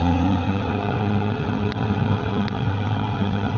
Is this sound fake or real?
fake